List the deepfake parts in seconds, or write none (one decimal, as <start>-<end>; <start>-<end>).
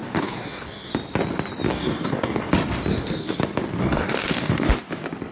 0.0-0.9; 1.7-2.5; 2.9-3.4; 3.8-4.7